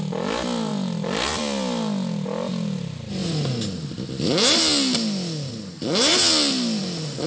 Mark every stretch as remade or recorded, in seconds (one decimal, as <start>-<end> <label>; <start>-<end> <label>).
0.0-7.3 recorded